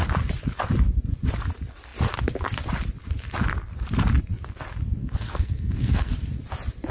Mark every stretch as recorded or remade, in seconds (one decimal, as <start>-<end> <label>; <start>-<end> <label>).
0.0-5.0 recorded; 5.0-6.1 remade; 6.1-6.9 recorded